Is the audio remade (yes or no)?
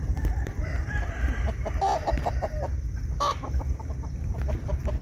yes